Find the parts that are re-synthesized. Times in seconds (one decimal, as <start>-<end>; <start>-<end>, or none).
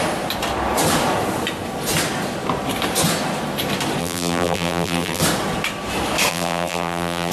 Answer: 4.0-5.2; 6.3-7.3